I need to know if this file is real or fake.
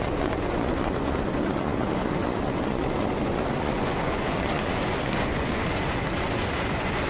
fake